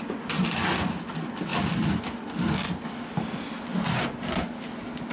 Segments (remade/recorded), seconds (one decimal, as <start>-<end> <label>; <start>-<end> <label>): 0.0-5.1 recorded